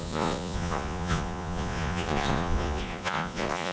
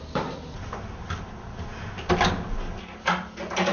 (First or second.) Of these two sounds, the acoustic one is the second